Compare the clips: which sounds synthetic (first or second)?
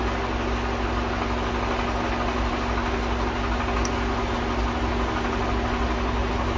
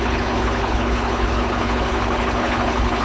second